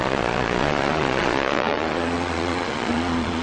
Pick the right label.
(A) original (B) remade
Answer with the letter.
B